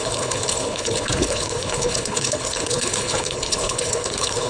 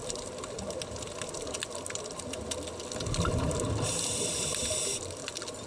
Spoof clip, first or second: first